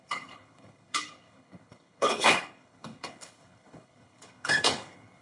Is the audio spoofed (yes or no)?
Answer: yes